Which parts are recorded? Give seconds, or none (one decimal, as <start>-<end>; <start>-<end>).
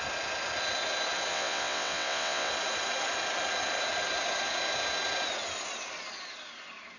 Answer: 0.0-1.3; 2.5-7.0